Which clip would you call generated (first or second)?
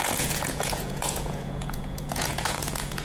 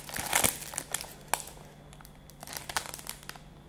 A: first